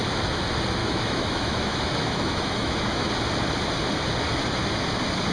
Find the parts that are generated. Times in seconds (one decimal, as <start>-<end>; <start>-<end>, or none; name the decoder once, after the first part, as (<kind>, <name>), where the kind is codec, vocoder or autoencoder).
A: 0.8-3.1 (autoencoder, DAC-VAE)